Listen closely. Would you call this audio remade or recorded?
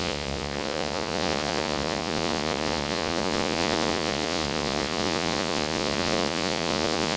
remade